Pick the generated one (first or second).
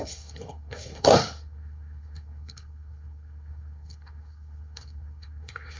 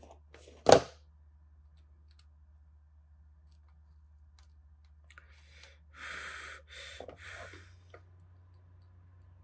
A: first